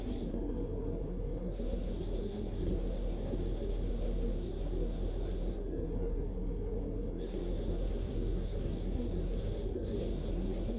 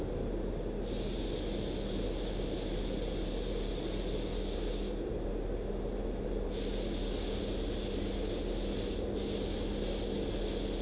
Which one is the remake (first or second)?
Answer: first